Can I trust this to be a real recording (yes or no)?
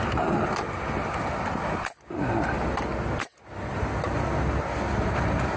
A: yes